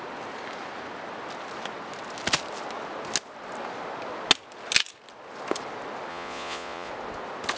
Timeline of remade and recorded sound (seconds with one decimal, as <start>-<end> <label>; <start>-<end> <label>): 0.0-6.1 recorded; 6.1-6.9 remade; 6.9-7.6 recorded